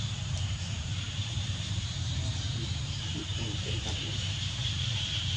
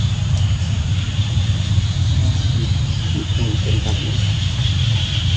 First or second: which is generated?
first